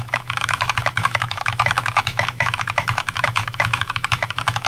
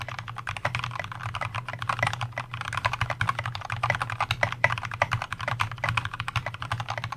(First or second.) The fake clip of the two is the first